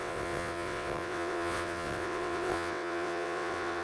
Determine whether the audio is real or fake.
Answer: fake